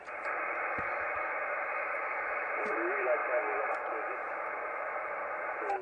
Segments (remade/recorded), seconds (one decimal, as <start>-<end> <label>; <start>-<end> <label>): 0.0-5.8 recorded